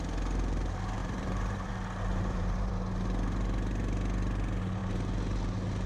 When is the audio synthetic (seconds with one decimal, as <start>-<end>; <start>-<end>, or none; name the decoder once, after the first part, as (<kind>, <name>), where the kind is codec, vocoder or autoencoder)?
1.0-1.7 (vocoder, BigVGAN v2); 2.1-2.7